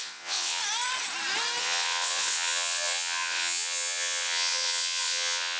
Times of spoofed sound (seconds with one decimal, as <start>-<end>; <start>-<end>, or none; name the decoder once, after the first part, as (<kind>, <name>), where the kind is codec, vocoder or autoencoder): 0.0-0.6 (vocoder, WaveNeXt); 1.6-5.6